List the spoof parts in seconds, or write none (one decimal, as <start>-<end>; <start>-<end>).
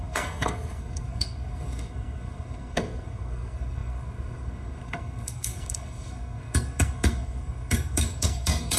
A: 0.0-8.8